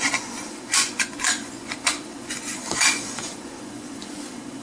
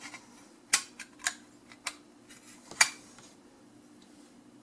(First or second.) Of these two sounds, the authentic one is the second